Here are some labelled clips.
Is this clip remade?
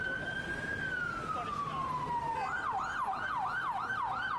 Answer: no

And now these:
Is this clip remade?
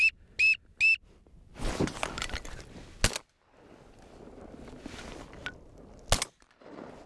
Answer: no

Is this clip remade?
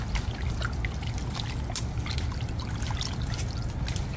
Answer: no